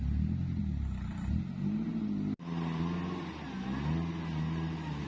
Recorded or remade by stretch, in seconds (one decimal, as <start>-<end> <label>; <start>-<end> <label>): 0.0-5.1 recorded